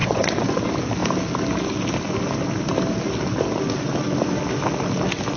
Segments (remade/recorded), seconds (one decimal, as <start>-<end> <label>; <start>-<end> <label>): 0.0-0.6 remade; 0.6-5.4 recorded

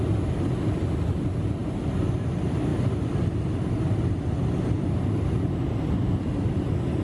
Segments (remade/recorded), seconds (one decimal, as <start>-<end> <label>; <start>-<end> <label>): 0.0-7.0 recorded

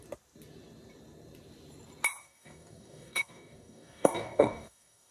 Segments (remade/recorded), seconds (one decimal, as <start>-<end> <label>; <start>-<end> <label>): 0.0-2.2 recorded; 2.2-5.1 remade

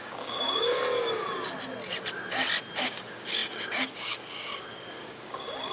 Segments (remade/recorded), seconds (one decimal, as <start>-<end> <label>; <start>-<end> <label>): 0.0-0.8 remade; 0.8-2.8 recorded; 2.8-5.7 remade

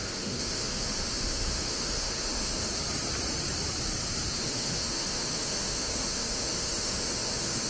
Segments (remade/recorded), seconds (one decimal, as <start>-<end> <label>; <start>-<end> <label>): 0.0-2.7 remade; 2.7-4.4 recorded; 4.4-7.7 remade